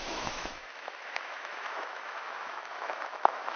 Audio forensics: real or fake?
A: fake